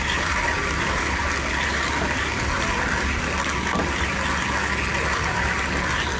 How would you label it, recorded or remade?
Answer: recorded